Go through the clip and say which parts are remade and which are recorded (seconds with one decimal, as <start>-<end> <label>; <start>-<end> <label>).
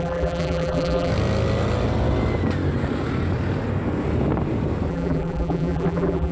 0.0-1.1 remade; 1.1-4.9 recorded; 4.9-6.3 remade